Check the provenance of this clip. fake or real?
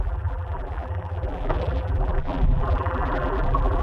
fake